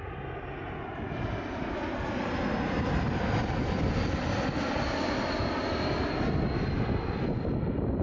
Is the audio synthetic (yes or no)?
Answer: no